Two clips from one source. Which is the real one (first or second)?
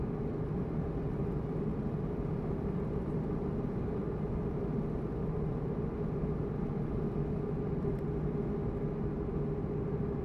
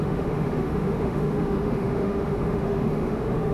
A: first